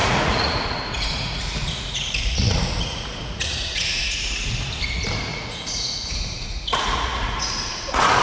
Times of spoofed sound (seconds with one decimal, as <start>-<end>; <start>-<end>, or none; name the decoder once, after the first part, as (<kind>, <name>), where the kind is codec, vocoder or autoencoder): 0.0-4.5 (vocoder, Vocos); 5.3-8.2